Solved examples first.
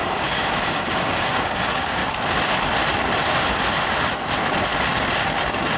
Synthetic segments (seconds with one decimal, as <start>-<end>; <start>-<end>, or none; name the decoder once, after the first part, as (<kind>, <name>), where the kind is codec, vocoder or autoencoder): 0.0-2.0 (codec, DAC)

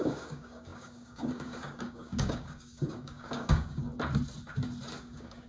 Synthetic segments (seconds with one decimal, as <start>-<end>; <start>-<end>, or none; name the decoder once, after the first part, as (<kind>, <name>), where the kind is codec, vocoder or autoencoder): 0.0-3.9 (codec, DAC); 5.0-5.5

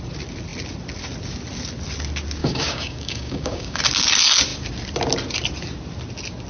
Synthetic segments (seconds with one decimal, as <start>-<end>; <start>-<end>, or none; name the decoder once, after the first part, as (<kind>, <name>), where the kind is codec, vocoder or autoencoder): 2.4-3.8 (codec, DAC)